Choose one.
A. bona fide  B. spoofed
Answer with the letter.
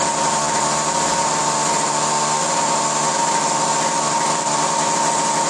A